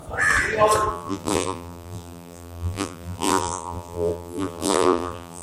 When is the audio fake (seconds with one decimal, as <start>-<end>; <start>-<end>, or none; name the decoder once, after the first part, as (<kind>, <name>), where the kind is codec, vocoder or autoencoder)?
0.9-5.4 (vocoder, BigVGAN v2)